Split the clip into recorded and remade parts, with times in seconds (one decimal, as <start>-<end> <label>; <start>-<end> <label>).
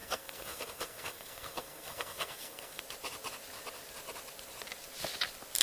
0.0-2.8 remade; 2.8-5.6 recorded